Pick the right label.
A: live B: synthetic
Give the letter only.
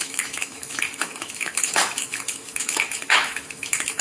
B